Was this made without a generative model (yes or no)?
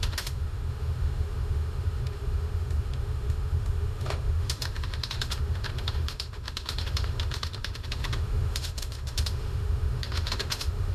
no